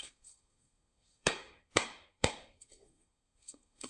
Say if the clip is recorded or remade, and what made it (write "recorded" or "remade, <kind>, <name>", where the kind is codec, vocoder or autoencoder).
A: remade, codec, SNAC